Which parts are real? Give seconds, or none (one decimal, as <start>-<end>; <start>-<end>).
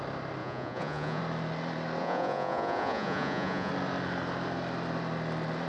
0.0-0.4; 1.2-2.0; 3.7-5.7